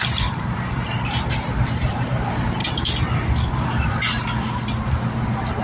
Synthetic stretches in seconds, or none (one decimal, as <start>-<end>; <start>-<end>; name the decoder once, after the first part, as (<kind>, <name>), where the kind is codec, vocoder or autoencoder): 0.0-0.8 (vocoder, BigVGAN v2); 1.7-2.6; 3.6-5.6